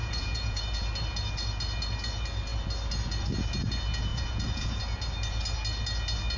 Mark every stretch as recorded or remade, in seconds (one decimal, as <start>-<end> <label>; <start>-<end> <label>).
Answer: 0.0-0.6 remade; 0.6-4.1 recorded; 4.1-4.8 remade; 4.8-6.4 recorded